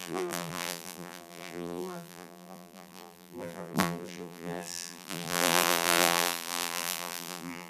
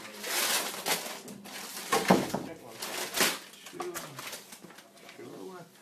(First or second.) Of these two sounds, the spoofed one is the first